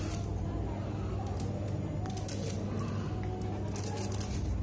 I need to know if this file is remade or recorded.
recorded